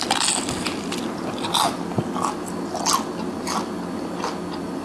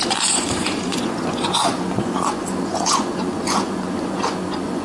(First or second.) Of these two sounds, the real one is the first